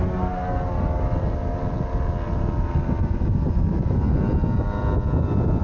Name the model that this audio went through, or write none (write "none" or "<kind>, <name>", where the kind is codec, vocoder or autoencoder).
none